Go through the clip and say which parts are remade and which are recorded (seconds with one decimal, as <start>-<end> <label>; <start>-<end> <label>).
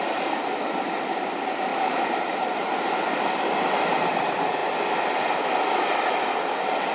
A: 0.0-1.7 recorded; 1.7-2.9 remade; 2.9-6.9 recorded